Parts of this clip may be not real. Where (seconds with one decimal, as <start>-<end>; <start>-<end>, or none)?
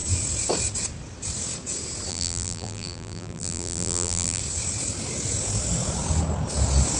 2.1-4.4